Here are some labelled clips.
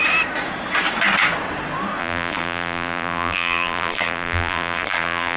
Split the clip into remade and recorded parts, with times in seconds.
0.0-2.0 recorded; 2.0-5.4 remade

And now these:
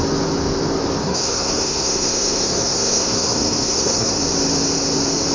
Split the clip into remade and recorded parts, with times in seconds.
0.0-1.0 recorded; 1.0-4.2 remade; 4.2-5.3 recorded

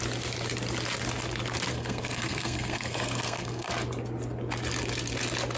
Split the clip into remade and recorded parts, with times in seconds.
0.0-1.7 recorded; 1.7-3.7 remade; 3.7-5.6 recorded

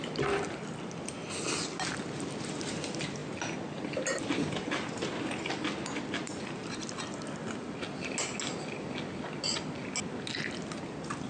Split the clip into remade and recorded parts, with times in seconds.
0.0-11.3 recorded

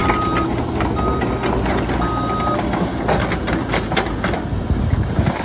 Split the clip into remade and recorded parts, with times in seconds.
0.0-5.4 recorded